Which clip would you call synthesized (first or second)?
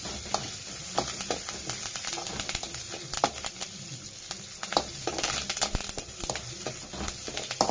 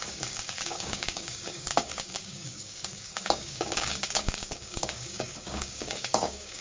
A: second